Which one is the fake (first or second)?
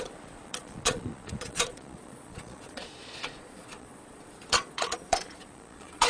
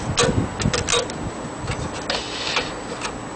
first